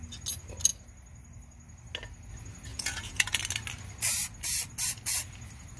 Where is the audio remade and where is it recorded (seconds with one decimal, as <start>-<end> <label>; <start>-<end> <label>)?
0.0-2.7 recorded; 2.7-3.4 remade; 3.4-5.8 recorded